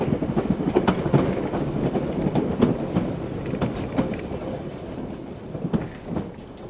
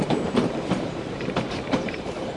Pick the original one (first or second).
first